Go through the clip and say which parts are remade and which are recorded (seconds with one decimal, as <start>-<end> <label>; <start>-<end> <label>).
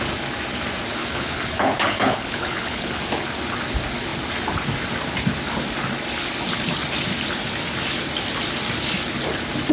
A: 0.0-1.0 recorded; 1.0-3.0 remade; 3.0-9.7 recorded